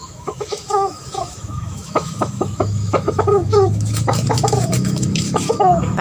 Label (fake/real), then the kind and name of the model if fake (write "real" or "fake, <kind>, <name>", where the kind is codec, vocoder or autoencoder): fake, autoencoder, DAC-VAE